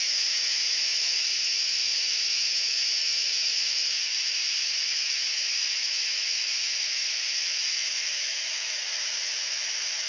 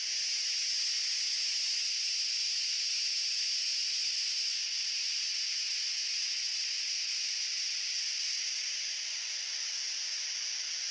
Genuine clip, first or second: second